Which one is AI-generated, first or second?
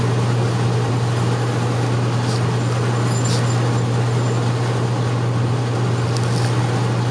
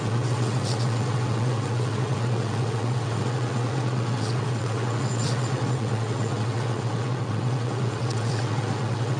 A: second